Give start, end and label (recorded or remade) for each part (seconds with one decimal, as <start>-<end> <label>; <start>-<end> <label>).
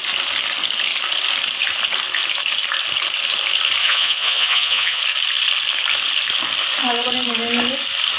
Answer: 0.0-3.8 recorded; 3.8-5.0 remade; 5.0-8.2 recorded